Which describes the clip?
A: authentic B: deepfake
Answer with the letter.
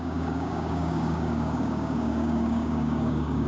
B